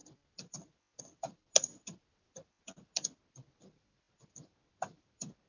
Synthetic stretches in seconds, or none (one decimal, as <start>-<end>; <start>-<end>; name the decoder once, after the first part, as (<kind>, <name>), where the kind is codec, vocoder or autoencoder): none